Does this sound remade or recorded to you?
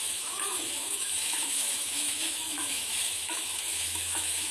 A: remade